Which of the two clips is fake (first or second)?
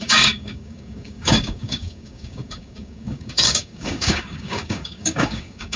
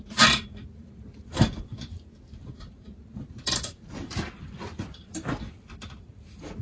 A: first